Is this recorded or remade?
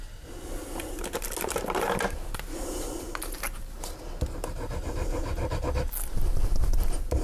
recorded